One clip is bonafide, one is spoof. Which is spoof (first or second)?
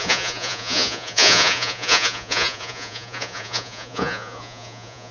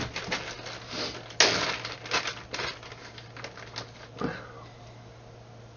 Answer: first